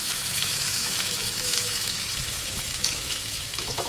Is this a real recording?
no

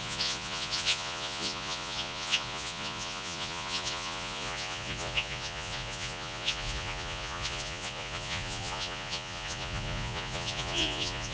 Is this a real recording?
no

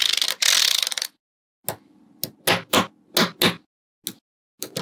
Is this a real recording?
yes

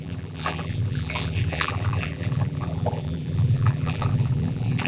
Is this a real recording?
no